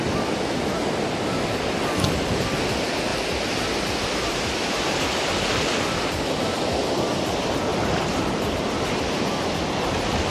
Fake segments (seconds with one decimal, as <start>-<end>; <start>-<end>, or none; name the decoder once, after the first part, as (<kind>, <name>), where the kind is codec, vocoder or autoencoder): 3.1-5.3 (vocoder, BigVGAN v2); 7.7-9.0